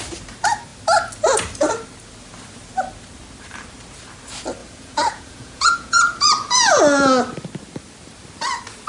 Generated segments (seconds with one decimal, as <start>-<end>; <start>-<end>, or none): 4.6-6.8